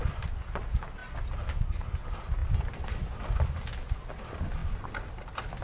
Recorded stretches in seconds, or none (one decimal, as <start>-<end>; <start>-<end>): 0.0-5.6